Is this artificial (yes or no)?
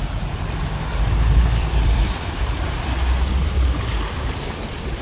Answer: yes